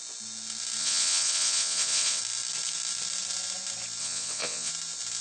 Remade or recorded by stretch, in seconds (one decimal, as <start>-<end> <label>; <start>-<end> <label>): 0.0-0.8 recorded; 0.8-2.2 remade; 2.2-4.0 recorded; 4.0-4.7 remade; 4.7-5.2 recorded